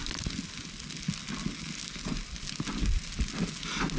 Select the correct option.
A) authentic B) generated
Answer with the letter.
A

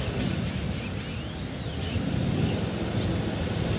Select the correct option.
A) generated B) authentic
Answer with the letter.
B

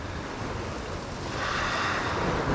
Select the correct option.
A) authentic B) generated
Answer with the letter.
A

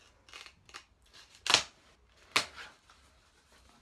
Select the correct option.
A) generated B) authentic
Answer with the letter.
B